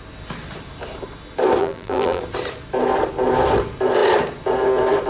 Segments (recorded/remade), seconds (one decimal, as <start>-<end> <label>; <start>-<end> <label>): 0.0-1.6 recorded; 1.6-2.2 remade; 2.2-5.1 recorded